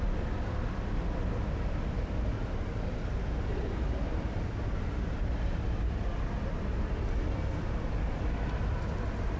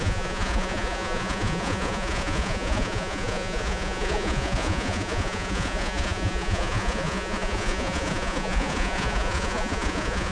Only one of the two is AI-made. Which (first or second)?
second